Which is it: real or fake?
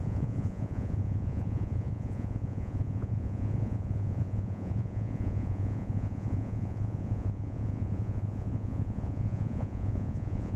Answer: fake